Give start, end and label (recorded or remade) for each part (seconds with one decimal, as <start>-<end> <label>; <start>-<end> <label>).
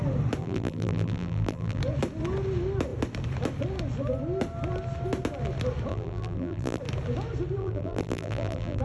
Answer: 0.0-0.4 recorded; 0.4-1.8 remade; 1.8-5.9 recorded; 5.9-6.8 remade; 6.8-7.6 recorded; 7.6-8.8 remade